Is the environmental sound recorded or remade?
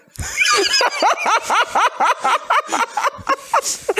recorded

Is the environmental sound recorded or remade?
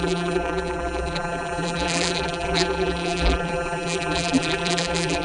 remade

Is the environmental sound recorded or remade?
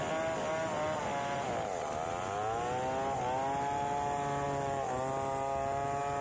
recorded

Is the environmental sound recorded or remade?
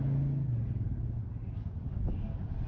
recorded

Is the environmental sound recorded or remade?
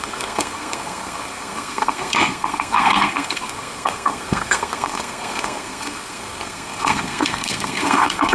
remade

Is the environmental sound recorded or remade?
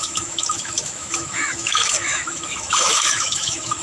remade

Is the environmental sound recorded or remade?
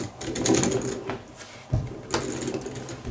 recorded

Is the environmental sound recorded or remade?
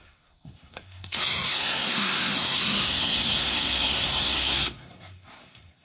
remade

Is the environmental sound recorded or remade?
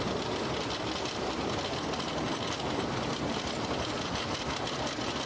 recorded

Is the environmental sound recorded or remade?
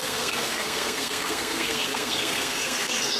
remade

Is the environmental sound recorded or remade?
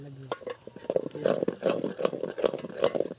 recorded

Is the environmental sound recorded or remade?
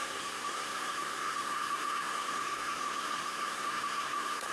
remade